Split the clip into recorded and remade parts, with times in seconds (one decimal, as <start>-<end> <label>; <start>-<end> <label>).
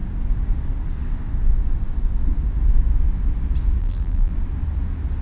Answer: 0.0-3.8 recorded; 3.8-4.3 remade; 4.3-5.2 recorded